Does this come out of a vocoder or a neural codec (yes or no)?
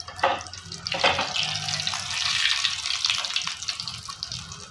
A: no